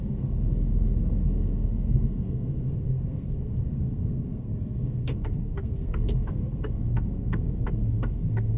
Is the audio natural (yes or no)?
no